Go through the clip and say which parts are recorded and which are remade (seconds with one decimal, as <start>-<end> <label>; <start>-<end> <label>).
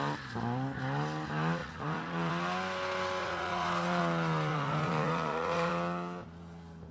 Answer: 0.0-1.6 recorded; 1.6-2.3 remade; 2.3-3.2 recorded; 3.2-4.0 remade; 4.0-4.5 recorded; 4.5-5.7 remade; 5.7-6.9 recorded